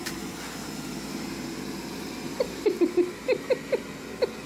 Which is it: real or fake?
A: real